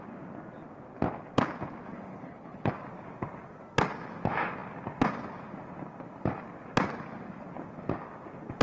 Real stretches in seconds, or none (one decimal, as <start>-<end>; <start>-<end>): 0.0-2.1; 2.7-8.6